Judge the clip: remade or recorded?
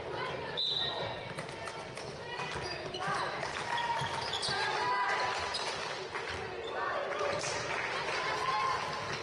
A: recorded